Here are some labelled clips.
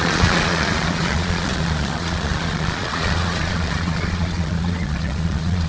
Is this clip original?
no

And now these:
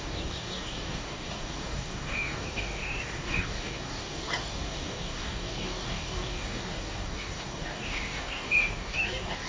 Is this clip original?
no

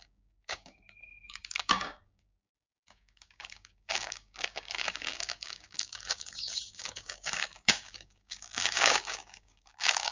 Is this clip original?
no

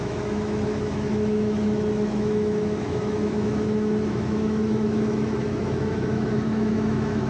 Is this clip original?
no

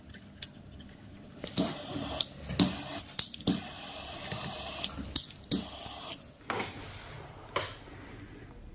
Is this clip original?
yes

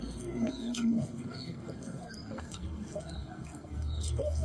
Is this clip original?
no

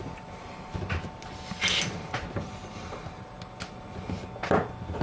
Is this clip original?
yes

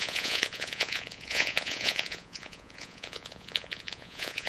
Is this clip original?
no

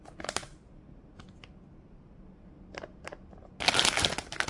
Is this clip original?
yes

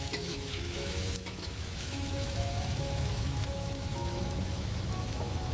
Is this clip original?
no